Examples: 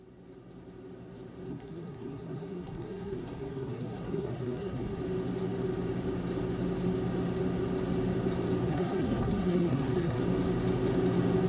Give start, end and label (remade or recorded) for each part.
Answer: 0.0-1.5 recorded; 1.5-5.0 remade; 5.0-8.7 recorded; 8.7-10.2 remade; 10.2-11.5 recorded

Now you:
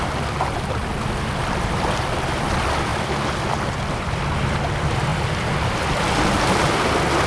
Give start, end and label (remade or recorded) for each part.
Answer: 0.0-7.3 recorded